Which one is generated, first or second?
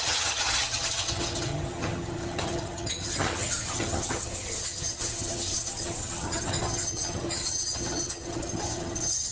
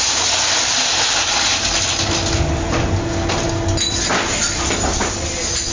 first